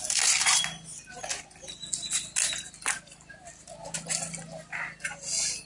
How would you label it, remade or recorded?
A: recorded